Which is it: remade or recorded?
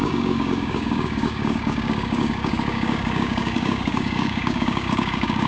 remade